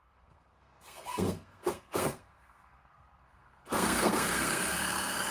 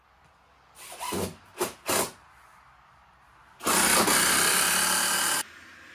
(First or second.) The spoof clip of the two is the first